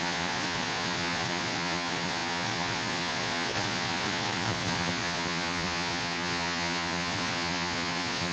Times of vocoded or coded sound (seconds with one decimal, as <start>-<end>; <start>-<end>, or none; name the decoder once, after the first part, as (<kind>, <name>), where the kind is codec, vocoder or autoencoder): 0.0-8.3 (vocoder, Vocos)